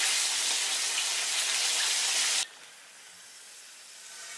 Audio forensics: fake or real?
real